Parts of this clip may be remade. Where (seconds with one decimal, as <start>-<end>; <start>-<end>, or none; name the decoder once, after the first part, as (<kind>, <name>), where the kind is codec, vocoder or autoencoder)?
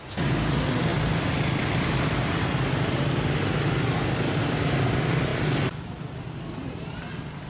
none